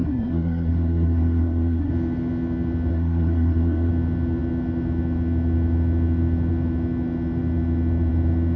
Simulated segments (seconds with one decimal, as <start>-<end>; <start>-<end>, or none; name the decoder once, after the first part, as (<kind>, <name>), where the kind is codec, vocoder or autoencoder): 0.0-1.9 (codec, SNAC); 2.9-3.9